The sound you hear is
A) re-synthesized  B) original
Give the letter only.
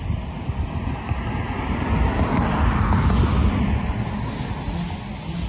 B